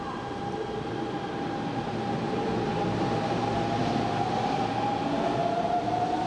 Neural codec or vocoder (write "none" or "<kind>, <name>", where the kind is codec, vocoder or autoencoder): none